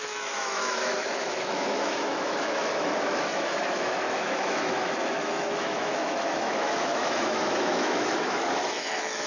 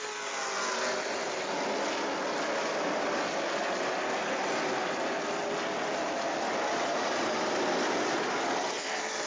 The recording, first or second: second